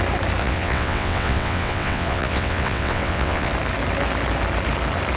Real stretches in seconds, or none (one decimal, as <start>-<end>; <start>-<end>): 0.0-0.4; 3.5-5.2